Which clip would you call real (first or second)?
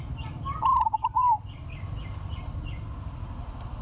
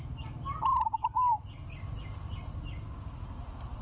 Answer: second